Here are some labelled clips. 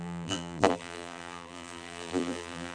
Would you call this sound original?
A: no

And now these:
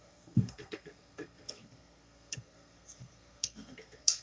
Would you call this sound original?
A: no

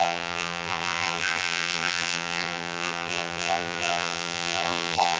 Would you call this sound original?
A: no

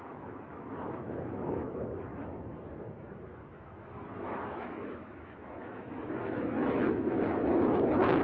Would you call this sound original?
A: no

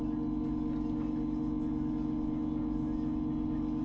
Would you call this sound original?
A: yes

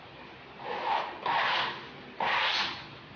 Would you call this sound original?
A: yes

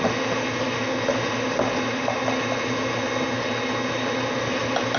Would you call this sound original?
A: yes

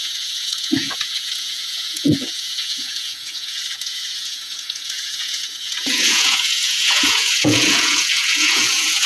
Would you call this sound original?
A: no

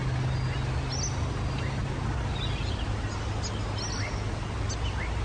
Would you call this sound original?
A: yes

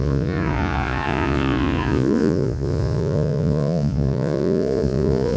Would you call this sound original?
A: no